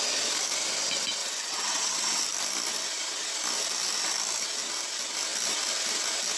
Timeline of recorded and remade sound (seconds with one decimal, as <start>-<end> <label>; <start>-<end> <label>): 0.0-1.2 recorded; 1.2-2.2 remade; 2.2-6.4 recorded